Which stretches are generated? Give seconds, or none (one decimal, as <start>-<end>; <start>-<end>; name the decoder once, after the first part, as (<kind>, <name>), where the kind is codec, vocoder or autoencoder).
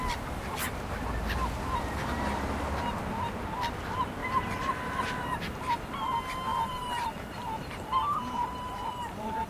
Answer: 6.5-9.5 (vocoder, BigVGAN v2)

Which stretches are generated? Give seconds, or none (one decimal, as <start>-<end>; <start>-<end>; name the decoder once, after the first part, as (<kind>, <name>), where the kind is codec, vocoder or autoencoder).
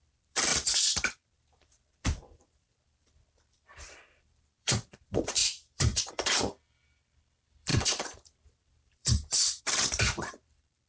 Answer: 0.0-0.5 (vocoder, BigVGAN v2); 1.1-10.9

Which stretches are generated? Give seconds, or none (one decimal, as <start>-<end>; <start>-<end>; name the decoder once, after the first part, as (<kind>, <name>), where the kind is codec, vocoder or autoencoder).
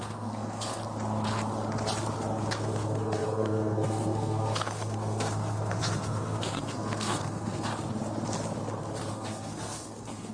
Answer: 0.0-0.8 (codec, SNAC); 2.6-7.7; 9.1-10.3